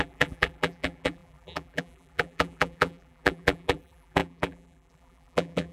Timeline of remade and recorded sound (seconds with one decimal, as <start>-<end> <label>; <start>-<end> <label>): 0.0-5.7 remade